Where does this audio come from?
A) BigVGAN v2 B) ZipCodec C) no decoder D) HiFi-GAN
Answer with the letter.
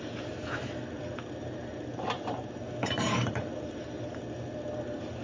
A